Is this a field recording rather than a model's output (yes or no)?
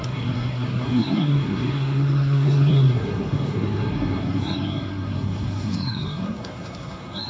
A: no